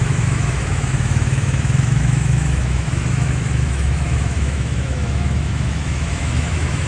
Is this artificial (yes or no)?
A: yes